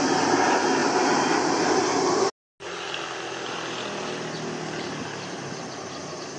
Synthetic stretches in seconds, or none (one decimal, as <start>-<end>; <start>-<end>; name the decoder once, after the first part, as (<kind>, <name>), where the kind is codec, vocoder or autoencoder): none